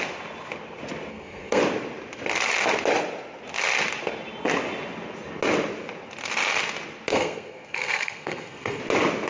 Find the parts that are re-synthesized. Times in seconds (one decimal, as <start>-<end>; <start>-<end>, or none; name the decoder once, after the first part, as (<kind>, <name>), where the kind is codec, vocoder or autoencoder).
1.1-1.6 (codec, SNAC); 7.1-8.8